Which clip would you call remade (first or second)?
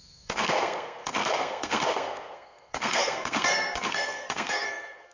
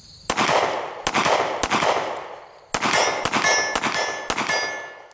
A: first